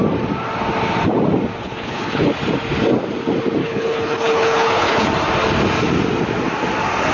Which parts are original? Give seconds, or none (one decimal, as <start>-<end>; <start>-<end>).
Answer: 0.0-1.6; 2.3-3.6; 5.1-7.1